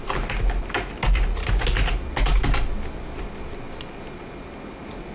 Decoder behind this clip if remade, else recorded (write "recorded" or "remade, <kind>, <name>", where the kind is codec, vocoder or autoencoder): recorded